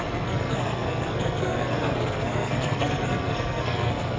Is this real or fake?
fake